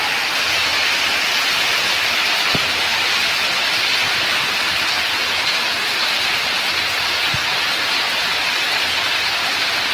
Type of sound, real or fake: real